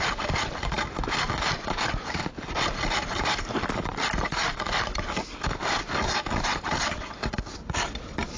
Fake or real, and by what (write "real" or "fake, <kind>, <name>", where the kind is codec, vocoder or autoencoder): fake, vocoder, BigVGAN v2